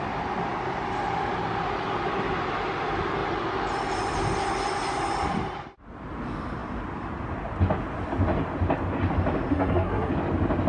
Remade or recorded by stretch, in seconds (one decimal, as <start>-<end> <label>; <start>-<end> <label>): 0.0-9.5 recorded; 9.5-10.1 remade; 10.1-10.7 recorded